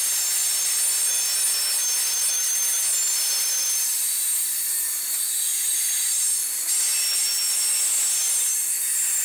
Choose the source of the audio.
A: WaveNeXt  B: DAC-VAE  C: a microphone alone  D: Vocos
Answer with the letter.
C